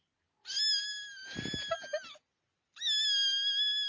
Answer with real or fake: real